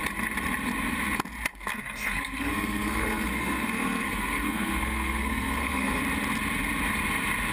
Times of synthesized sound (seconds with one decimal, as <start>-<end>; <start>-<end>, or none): 1.5-6.0